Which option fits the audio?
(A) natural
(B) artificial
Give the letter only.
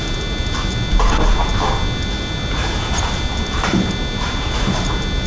A